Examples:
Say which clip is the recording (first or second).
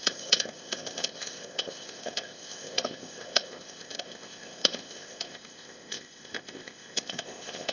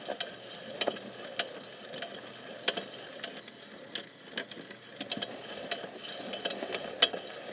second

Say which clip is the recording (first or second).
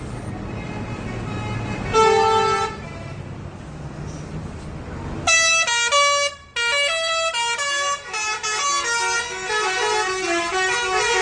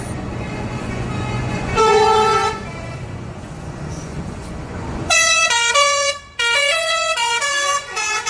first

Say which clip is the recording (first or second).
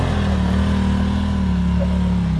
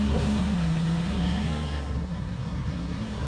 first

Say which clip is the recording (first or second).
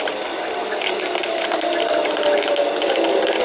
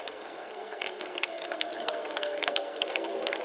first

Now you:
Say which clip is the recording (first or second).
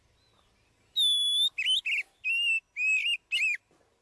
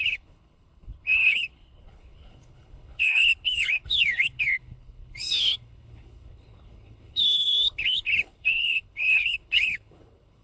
first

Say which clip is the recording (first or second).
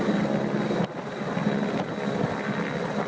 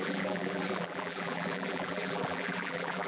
first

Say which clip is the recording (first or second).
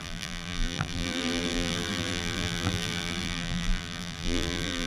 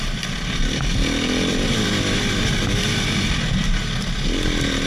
second